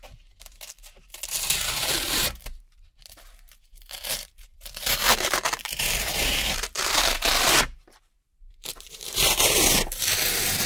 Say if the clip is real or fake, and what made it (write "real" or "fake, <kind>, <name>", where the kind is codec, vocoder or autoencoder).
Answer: fake, vocoder, BigVGAN v2